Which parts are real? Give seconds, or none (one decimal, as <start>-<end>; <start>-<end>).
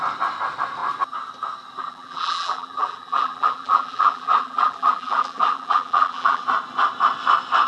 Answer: 0.0-1.8; 6.4-7.7